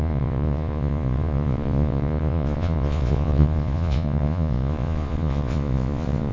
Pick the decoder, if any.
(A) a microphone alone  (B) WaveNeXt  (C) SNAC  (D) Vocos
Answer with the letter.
D